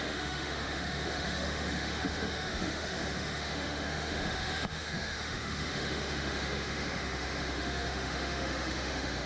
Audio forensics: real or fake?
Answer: fake